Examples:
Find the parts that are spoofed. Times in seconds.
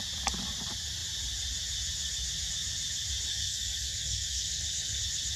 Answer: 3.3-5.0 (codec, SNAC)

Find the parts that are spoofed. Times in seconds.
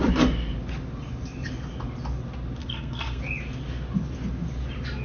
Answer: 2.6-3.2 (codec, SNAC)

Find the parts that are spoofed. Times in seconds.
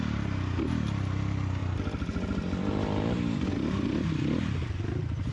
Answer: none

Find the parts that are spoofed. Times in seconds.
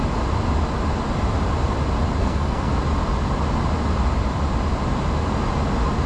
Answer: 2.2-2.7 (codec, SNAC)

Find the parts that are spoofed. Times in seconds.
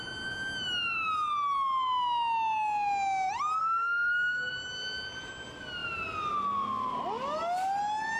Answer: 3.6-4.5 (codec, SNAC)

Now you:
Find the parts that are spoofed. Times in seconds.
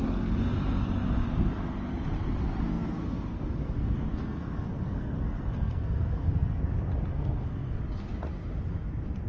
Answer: 2.7-6.6 (codec, SNAC); 7.1-7.8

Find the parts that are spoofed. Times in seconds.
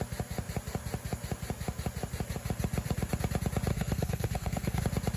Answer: 3.7-4.8 (codec, SNAC)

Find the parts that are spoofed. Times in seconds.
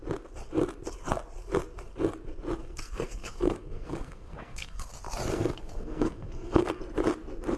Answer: 2.6-4.8 (codec, SNAC); 5.3-6.8